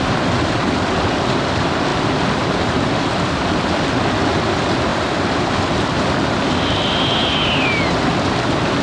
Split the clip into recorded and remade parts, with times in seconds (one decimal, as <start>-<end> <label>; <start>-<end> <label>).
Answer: 0.0-8.8 recorded